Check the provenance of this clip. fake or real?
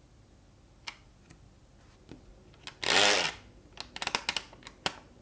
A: real